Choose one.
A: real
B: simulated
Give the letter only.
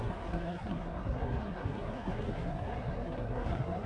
B